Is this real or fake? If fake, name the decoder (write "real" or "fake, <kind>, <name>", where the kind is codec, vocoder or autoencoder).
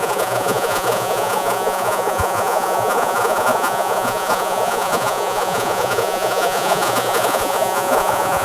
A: fake, vocoder, Vocos